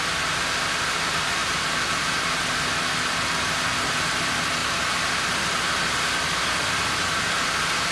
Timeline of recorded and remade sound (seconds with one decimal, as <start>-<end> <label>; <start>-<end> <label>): 0.0-1.4 recorded; 1.4-2.4 remade; 2.4-4.6 recorded; 4.6-5.2 remade; 5.2-7.9 recorded